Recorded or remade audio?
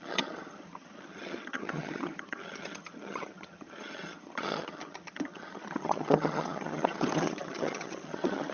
remade